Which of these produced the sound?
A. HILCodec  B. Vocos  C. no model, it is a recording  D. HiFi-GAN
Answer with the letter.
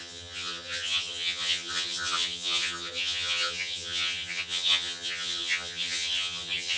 D